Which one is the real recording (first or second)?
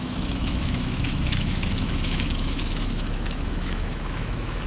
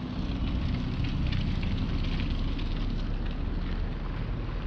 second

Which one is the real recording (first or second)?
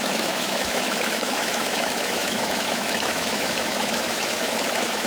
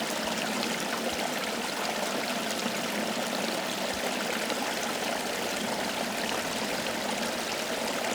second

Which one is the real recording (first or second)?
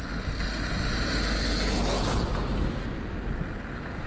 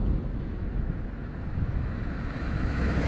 first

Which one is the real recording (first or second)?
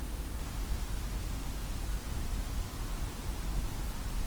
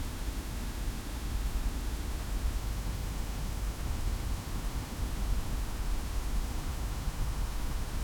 first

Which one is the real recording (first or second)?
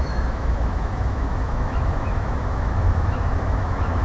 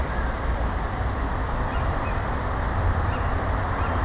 second